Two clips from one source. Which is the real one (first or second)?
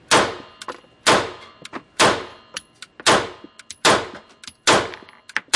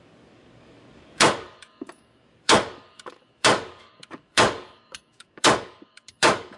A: first